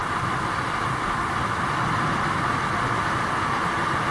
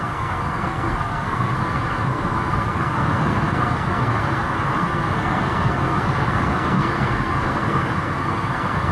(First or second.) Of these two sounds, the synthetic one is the second